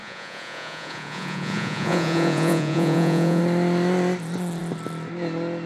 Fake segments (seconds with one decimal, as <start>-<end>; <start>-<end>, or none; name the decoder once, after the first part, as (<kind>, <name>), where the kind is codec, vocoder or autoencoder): 0.0-3.4 (vocoder, Vocos)